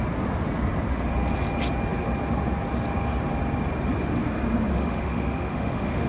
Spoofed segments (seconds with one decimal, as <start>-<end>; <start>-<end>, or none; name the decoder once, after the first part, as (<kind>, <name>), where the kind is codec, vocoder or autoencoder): 4.7-6.1 (autoencoder, DAC-VAE)